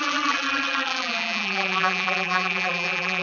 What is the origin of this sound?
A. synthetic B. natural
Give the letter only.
A